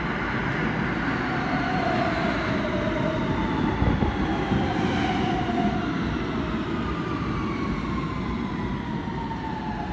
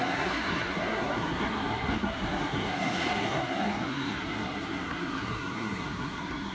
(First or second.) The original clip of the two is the first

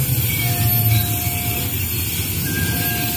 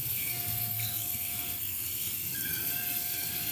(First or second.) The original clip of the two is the first